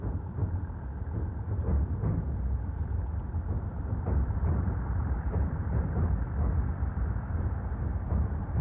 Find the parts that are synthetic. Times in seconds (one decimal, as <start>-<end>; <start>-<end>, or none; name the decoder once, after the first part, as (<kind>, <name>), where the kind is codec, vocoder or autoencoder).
0.0-0.4 (vocoder, BigVGAN v2); 4.0-6.0; 7.1-8.6